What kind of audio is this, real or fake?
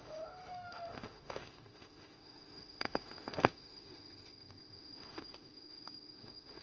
fake